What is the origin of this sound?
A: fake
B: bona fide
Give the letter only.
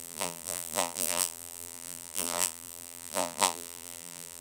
A